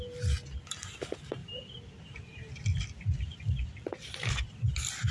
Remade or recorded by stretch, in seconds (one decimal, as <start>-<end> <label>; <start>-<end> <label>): 0.0-1.4 recorded; 1.4-4.5 remade; 4.5-5.1 recorded